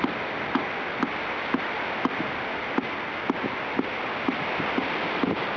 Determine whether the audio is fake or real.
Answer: real